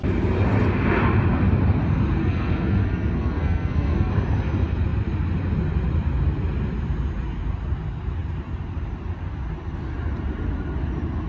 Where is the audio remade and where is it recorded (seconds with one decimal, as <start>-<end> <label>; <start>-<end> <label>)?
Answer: 0.0-2.2 recorded; 2.2-4.1 remade; 4.1-11.3 recorded